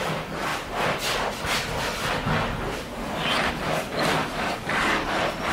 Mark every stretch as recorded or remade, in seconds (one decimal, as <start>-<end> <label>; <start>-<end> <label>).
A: 0.0-4.2 recorded; 4.2-5.1 remade; 5.1-5.5 recorded

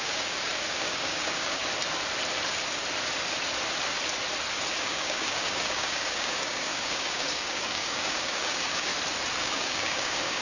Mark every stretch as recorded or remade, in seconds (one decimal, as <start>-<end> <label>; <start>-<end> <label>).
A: 0.0-1.6 remade; 1.6-4.8 recorded; 4.8-8.9 remade; 8.9-9.4 recorded; 9.4-10.4 remade

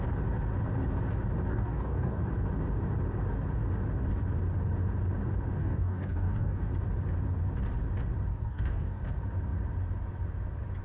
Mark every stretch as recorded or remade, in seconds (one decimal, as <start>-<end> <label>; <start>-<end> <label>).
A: 0.0-1.5 recorded; 1.5-2.2 remade; 2.2-5.6 recorded; 5.6-6.7 remade; 6.7-8.3 recorded; 8.3-9.0 remade; 9.0-10.8 recorded

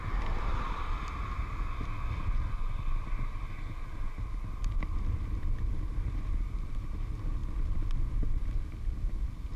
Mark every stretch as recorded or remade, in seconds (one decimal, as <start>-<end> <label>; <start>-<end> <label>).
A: 0.0-9.6 recorded